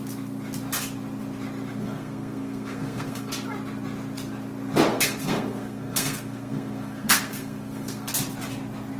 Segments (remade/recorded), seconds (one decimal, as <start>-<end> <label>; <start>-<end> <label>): 0.0-1.8 recorded; 1.8-3.3 remade; 3.3-4.9 recorded; 4.9-8.1 remade; 8.1-9.0 recorded